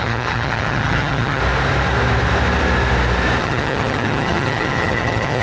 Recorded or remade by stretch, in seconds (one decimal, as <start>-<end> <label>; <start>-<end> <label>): 0.0-1.4 remade; 1.4-3.4 recorded; 3.4-5.4 remade